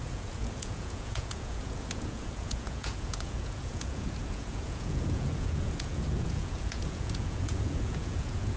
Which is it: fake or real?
fake